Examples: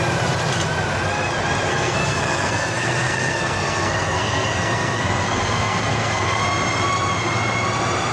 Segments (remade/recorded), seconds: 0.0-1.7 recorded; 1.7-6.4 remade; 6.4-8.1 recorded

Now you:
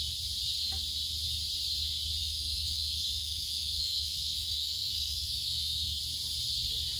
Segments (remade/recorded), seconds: 0.0-2.2 recorded; 2.2-6.0 remade; 6.0-7.0 recorded

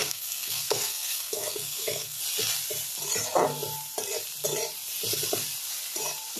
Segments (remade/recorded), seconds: 0.0-2.2 remade; 2.2-6.4 recorded

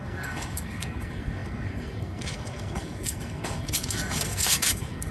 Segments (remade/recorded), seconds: 0.0-5.1 remade

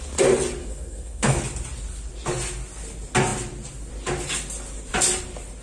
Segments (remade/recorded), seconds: 0.0-0.6 recorded; 0.6-1.4 remade; 1.4-5.6 recorded

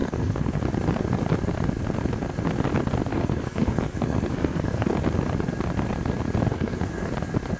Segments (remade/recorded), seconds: 0.0-0.6 remade; 0.6-3.1 recorded; 3.1-5.0 remade; 5.0-6.5 recorded; 6.5-7.1 remade; 7.1-7.6 recorded

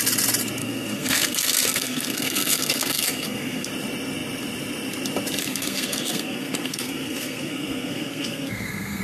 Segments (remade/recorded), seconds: 0.0-0.6 recorded; 0.6-3.7 remade; 3.7-5.4 recorded; 5.4-9.0 remade

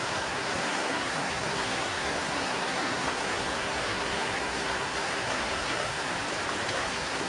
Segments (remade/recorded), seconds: 0.0-6.1 remade; 6.1-6.7 recorded; 6.7-7.3 remade